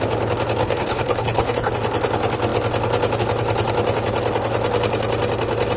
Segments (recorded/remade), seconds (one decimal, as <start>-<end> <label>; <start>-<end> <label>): 0.0-0.6 recorded; 0.6-1.7 remade; 1.7-5.8 recorded